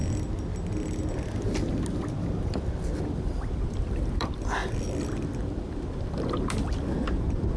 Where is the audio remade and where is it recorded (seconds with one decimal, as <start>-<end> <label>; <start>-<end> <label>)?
0.0-3.0 recorded; 3.0-7.6 remade